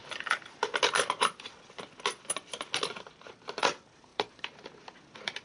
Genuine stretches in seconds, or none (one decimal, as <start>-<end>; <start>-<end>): 0.0-4.1; 4.8-5.4